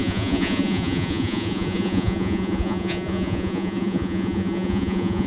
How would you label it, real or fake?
fake